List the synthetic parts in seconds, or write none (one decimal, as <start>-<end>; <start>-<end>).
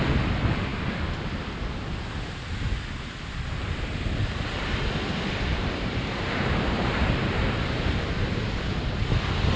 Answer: 5.5-8.7